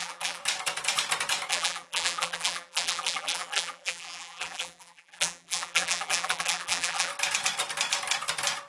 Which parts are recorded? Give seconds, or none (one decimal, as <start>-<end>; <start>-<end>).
0.4-1.5; 7.1-8.7